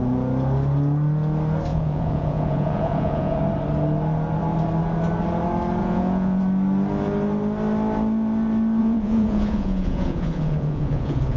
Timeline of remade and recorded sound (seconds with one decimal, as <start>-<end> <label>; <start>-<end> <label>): 0.0-1.7 recorded; 1.7-3.4 remade; 3.4-5.8 recorded; 5.8-6.4 remade; 6.4-8.8 recorded; 8.8-11.4 remade